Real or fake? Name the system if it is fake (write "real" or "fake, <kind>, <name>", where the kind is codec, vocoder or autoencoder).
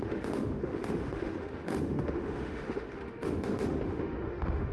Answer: fake, autoencoder, DAC-VAE